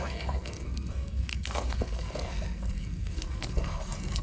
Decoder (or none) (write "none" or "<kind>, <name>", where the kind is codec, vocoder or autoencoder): codec, SNAC